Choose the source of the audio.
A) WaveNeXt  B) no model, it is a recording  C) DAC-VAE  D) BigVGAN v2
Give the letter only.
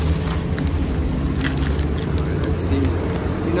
B